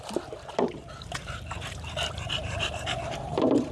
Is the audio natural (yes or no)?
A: no